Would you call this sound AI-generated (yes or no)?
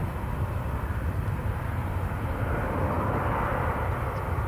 no